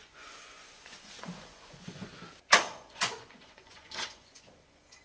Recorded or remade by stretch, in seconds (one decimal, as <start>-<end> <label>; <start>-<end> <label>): 0.0-2.1 remade; 2.1-2.6 recorded; 2.6-5.0 remade